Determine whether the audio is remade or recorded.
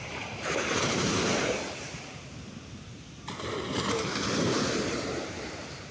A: remade